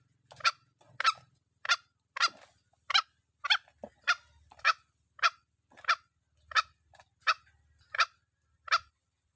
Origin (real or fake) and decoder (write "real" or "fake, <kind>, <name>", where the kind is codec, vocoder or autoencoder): real